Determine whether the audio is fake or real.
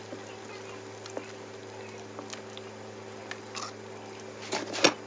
real